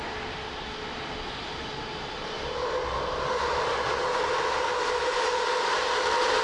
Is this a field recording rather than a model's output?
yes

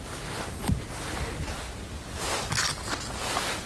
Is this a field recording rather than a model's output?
yes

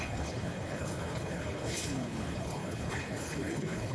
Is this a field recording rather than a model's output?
no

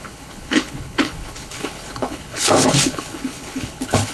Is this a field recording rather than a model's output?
no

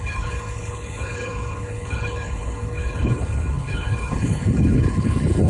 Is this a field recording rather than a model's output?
no